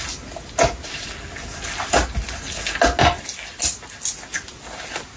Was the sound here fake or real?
real